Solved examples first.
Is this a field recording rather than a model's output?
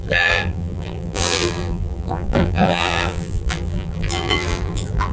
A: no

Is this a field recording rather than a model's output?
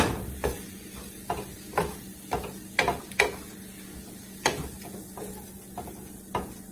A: yes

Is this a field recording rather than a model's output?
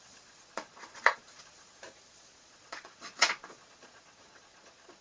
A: no